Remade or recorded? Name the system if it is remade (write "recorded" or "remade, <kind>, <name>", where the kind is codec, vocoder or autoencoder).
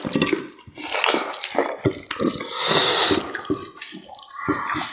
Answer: recorded